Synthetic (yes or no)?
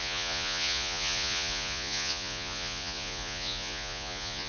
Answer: yes